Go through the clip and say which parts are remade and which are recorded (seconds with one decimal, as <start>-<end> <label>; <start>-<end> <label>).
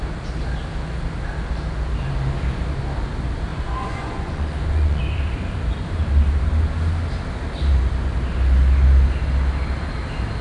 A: 0.0-3.5 recorded; 3.5-5.0 remade; 5.0-10.4 recorded